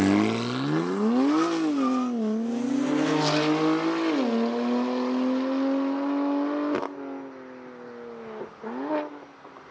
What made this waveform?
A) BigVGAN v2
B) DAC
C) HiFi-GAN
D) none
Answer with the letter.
D